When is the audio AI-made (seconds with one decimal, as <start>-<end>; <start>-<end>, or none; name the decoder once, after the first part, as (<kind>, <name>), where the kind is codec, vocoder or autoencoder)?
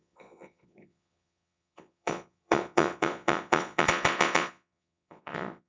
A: 0.0-5.7 (vocoder, Vocos)